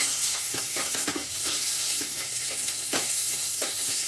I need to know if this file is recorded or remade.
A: remade